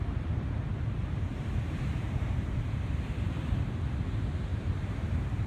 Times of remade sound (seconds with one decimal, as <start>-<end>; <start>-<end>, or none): 1.3-3.4; 4.5-5.5